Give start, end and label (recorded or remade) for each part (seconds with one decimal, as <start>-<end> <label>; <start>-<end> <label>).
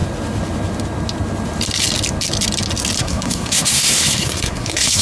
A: 0.0-3.0 recorded; 3.0-5.0 remade